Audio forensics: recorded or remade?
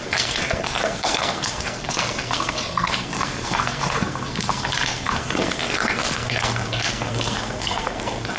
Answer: remade